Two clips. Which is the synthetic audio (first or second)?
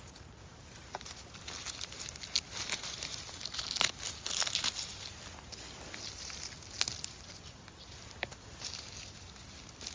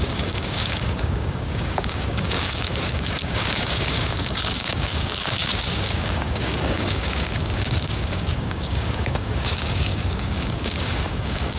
second